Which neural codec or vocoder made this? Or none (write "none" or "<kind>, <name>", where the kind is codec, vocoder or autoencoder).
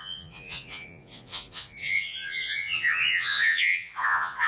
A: vocoder, Vocos